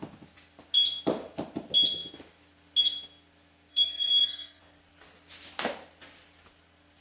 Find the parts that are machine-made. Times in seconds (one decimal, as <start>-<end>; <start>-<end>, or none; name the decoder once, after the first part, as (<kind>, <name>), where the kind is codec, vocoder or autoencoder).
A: 3.7-4.6 (codec, SNAC)